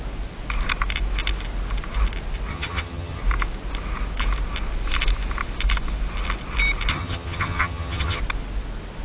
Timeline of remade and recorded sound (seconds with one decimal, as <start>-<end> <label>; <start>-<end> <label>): 0.0-2.5 recorded; 2.5-3.2 remade; 3.2-6.9 recorded; 6.9-8.2 remade; 8.2-9.0 recorded